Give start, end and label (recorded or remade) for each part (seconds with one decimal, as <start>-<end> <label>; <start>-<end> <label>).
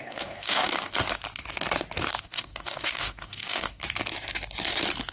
0.0-0.9 remade; 0.9-2.2 recorded; 2.2-3.8 remade; 3.8-5.1 recorded